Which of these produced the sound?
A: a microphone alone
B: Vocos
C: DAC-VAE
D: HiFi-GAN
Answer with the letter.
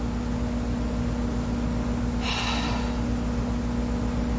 A